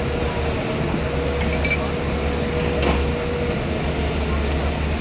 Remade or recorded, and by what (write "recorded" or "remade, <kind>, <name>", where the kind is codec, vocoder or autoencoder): recorded